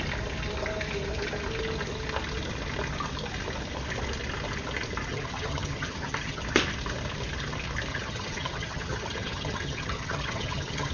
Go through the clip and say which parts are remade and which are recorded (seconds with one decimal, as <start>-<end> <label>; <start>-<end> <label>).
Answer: 0.0-5.1 recorded; 5.1-6.4 remade; 6.4-7.9 recorded; 7.9-10.9 remade